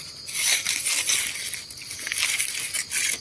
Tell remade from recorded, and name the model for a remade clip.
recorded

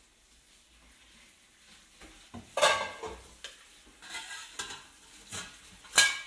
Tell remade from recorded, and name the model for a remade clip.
recorded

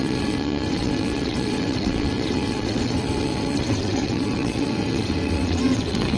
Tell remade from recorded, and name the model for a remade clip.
remade, vocoder, WaveNeXt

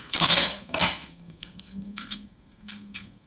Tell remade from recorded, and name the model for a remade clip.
remade, codec, SNAC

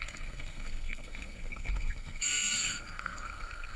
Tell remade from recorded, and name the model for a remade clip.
remade, codec, SNAC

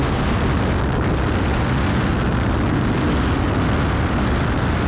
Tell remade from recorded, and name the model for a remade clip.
recorded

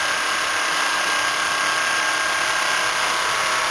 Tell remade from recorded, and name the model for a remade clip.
recorded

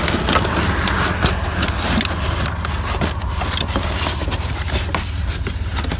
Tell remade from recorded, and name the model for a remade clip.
recorded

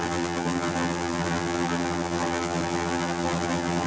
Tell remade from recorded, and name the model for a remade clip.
remade, vocoder, BigVGAN v2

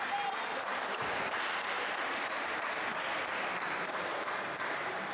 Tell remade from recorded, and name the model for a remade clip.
remade, vocoder, BigVGAN v2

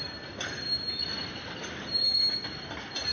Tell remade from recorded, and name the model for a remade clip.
recorded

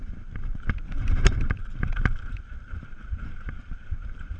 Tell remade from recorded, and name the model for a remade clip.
remade, vocoder, BigVGAN v2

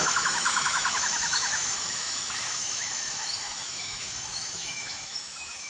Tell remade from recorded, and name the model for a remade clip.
remade, autoencoder, DAC-VAE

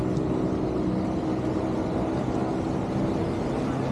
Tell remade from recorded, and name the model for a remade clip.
recorded